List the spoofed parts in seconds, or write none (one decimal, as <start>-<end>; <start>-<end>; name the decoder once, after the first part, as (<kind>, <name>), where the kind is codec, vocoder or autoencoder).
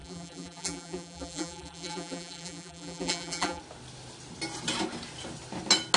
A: 0.0-3.6 (vocoder, BigVGAN v2)